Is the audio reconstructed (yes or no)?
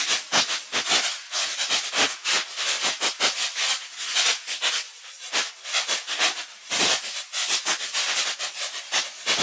no